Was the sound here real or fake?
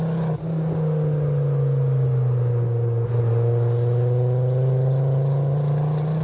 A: real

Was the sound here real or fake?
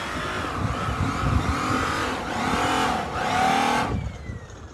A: fake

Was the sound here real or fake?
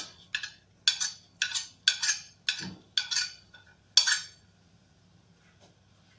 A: real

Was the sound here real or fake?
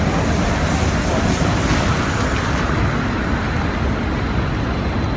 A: real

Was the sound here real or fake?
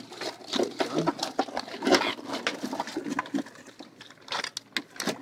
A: real